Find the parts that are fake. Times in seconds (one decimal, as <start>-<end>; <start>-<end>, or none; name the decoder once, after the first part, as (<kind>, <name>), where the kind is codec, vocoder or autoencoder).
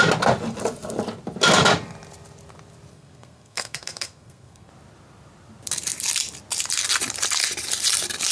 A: 2.9-4.7 (codec, SNAC)